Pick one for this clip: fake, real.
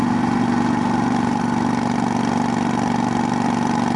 real